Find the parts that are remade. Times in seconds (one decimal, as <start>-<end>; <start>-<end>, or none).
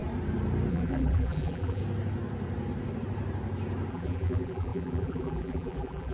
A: 0.7-1.8; 3.9-6.1